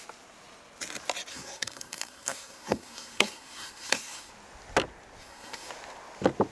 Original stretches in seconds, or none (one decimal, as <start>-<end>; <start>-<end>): 0.0-1.3; 4.3-5.2; 5.7-6.5